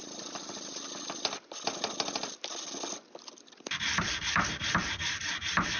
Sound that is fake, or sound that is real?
real